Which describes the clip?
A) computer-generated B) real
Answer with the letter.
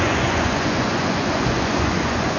A